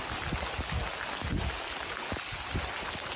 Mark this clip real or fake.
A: real